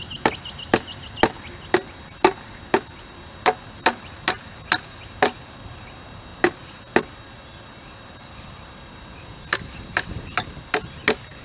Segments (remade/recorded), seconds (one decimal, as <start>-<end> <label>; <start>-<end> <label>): 0.0-11.4 recorded